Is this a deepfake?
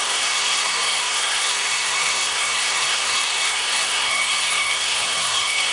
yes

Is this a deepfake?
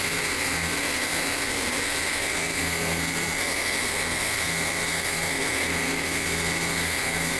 yes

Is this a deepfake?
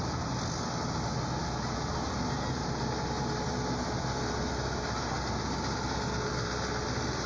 no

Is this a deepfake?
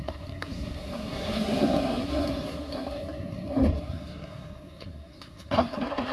yes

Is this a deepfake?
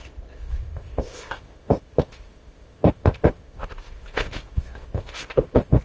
yes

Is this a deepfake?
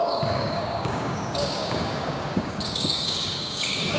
yes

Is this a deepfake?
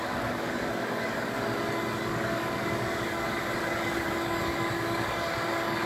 yes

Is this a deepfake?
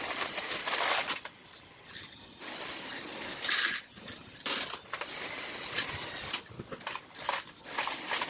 no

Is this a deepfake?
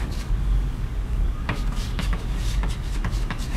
yes